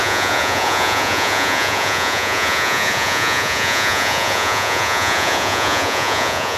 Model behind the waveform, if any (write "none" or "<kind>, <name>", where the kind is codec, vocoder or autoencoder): vocoder, Vocos